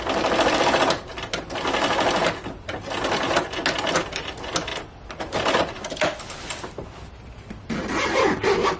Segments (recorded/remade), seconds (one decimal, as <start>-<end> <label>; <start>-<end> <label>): 0.0-8.8 recorded